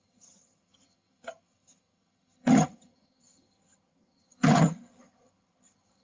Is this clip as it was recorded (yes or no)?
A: no